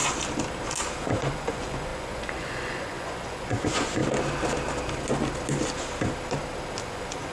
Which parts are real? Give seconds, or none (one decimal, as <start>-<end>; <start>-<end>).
0.0-1.0; 4.0-6.8